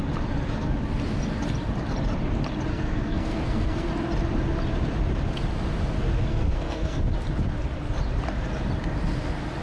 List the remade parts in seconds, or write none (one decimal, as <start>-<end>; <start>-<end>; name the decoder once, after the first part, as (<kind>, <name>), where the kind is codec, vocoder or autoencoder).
2.7-3.9 (codec, SNAC); 6.3-7.0